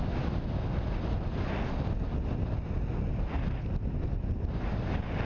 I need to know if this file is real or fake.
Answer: real